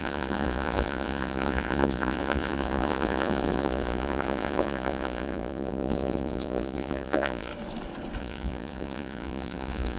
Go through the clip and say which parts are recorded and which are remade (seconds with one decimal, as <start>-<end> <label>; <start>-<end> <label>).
0.0-7.5 remade; 7.5-8.2 recorded; 8.2-10.0 remade